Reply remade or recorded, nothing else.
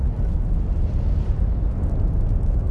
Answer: recorded